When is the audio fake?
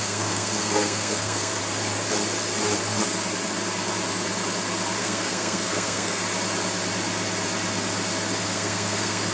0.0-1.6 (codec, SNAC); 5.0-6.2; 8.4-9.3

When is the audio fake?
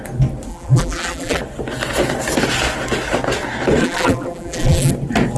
0.5-1.4 (vocoder, BigVGAN v2); 3.8-4.9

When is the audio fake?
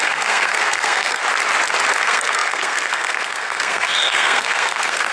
0.0-1.2 (codec, SNAC); 1.9-5.1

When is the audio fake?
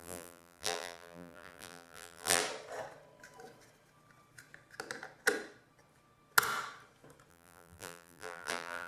0.0-2.4 (vocoder, BigVGAN v2); 7.3-8.9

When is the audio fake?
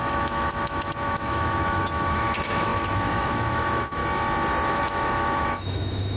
0.0-4.0 (autoencoder, DAC-VAE); 4.7-6.2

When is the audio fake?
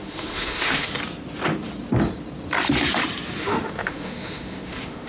0.0-0.9 (autoencoder, DAC-VAE); 3.4-5.1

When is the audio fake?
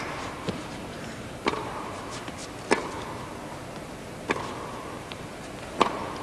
0.0-2.4 (vocoder, BigVGAN v2); 5.0-6.2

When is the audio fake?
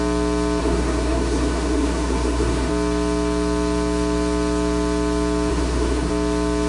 0.6-2.7 (codec, SNAC); 5.5-6.1